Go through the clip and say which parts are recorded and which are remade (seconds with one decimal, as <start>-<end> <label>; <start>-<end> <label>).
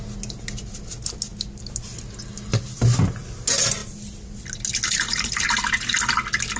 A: 0.0-6.6 recorded